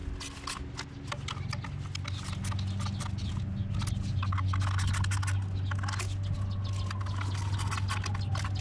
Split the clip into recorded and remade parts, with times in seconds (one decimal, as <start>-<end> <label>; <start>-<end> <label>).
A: 0.0-8.6 recorded